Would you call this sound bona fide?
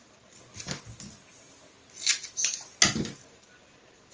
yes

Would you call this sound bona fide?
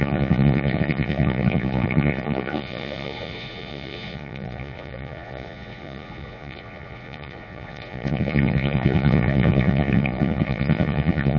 no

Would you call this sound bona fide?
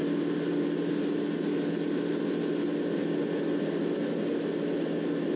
yes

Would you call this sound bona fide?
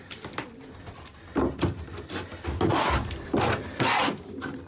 yes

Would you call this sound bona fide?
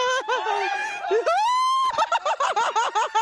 yes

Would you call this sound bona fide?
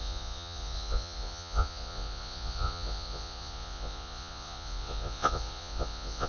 no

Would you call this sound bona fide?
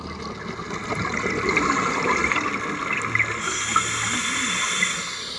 yes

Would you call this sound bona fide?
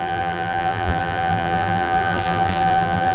no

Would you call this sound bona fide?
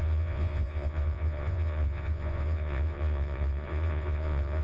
no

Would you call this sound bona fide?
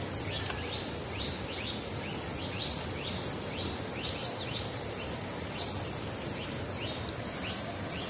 yes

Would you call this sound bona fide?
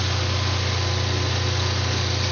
yes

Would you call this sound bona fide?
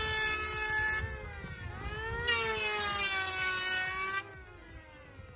yes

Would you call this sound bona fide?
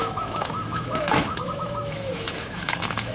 no